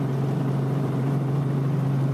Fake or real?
fake